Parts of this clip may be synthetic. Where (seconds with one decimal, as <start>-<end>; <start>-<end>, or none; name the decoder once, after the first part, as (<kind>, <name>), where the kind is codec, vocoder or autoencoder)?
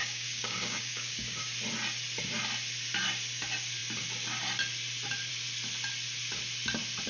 0.0-1.4 (codec, DAC)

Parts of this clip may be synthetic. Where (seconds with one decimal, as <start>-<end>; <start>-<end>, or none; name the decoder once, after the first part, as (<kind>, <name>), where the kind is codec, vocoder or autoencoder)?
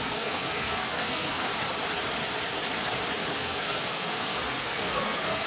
0.0-1.5 (codec, SNAC); 3.3-5.5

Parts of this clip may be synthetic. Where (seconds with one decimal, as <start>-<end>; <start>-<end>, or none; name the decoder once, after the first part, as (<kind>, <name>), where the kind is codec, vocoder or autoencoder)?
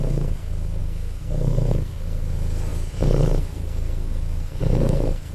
0.0-5.3 (codec, SNAC)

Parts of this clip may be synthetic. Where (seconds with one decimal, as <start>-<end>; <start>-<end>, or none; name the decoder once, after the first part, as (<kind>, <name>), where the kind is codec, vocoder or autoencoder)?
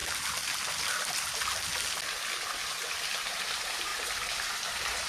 3.1-5.1 (vocoder, BigVGAN v2)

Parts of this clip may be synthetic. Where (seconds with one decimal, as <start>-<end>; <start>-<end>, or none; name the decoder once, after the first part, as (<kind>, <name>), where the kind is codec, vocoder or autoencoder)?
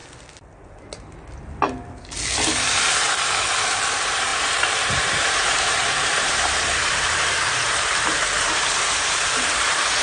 3.6-10.0 (vocoder, BigVGAN v2)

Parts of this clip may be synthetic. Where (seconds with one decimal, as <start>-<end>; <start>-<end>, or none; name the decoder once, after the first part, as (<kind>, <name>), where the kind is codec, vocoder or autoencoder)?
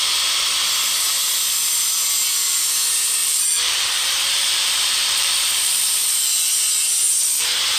3.2-6.4 (vocoder, BigVGAN v2)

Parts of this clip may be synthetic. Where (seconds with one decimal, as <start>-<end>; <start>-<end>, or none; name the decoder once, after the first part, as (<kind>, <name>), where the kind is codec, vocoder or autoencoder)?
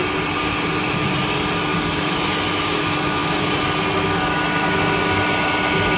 none